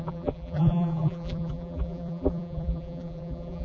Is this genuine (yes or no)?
no